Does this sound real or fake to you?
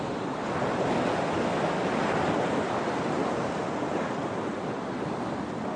real